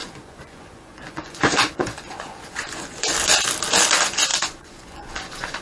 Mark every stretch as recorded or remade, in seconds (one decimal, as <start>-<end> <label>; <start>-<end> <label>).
0.0-3.1 remade; 3.1-3.9 recorded; 3.9-5.6 remade